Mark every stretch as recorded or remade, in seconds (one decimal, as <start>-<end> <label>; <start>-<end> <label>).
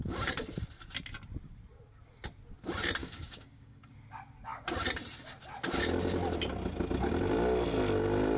0.0-3.0 recorded; 3.0-3.9 remade; 3.9-8.4 recorded